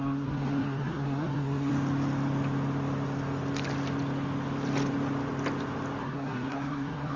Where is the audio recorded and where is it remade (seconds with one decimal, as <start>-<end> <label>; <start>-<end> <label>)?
0.0-1.7 remade; 1.7-6.0 recorded; 6.0-7.2 remade